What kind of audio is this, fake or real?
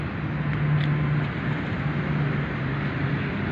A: real